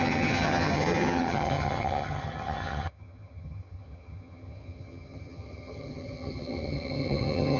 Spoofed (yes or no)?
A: yes